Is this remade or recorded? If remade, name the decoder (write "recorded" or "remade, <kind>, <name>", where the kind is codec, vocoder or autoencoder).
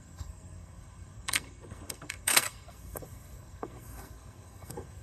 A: remade, codec, SNAC